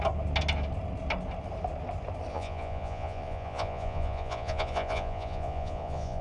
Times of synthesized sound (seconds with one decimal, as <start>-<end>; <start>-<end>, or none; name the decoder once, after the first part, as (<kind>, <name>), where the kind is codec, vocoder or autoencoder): 2.3-6.2 (vocoder, Vocos)